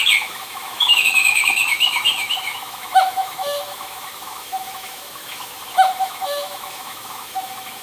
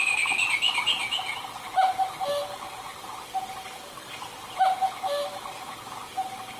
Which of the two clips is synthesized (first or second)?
first